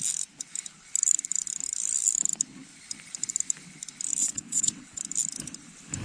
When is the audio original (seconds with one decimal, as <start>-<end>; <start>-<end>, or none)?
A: 0.0-4.2; 5.0-6.0